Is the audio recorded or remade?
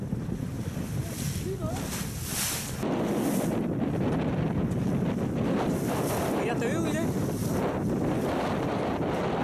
recorded